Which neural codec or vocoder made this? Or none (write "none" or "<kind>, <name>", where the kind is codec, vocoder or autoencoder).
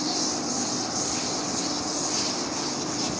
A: vocoder, BigVGAN v2